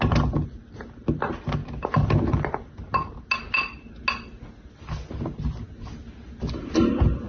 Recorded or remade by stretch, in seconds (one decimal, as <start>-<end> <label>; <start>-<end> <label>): 0.0-7.3 recorded